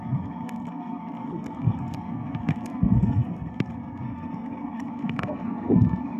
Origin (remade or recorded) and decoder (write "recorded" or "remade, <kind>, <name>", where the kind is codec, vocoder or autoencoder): remade, codec, SNAC